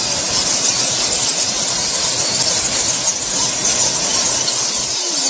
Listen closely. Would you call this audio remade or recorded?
recorded